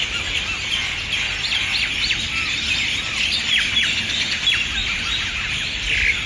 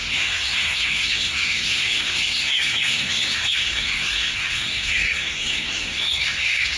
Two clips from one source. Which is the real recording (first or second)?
first